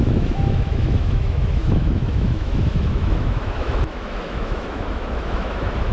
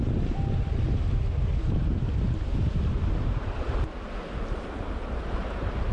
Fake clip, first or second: first